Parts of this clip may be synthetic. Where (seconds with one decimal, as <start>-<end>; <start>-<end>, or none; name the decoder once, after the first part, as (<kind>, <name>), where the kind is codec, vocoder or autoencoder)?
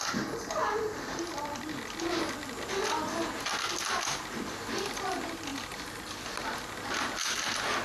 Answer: 0.6-1.2 (vocoder, BigVGAN v2)